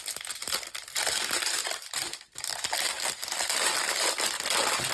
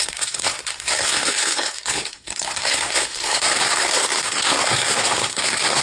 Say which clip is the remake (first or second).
second